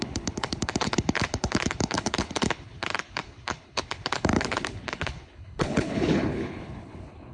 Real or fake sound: fake